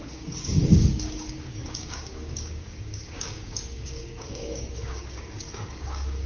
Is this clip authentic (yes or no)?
no